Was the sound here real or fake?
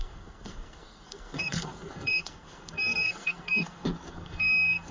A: fake